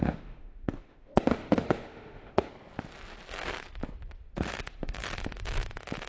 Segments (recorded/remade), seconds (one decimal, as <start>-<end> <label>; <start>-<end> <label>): 0.0-2.5 remade; 2.5-4.3 recorded; 4.3-5.2 remade; 5.2-6.1 recorded